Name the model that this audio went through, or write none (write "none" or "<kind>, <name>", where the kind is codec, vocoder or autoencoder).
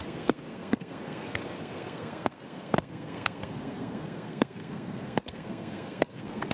codec, SNAC